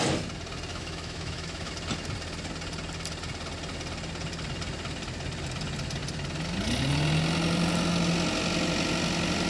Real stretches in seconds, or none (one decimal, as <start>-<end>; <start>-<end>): 0.0-0.7; 1.7-9.5